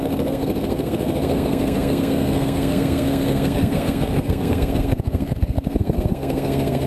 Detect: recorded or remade remade